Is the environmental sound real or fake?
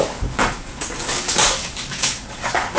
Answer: fake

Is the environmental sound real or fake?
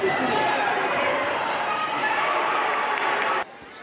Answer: fake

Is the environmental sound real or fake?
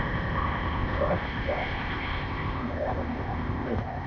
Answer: fake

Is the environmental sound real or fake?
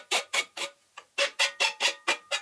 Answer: real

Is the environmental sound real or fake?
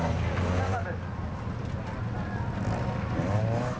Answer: real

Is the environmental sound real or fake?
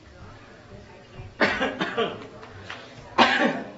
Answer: real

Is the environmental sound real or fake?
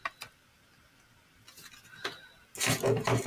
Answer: real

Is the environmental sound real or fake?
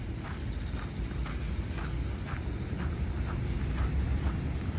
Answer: real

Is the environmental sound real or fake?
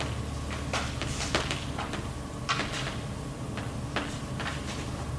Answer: real